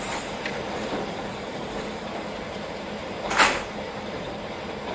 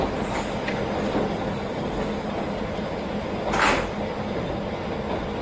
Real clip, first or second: second